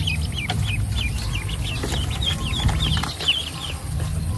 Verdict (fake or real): real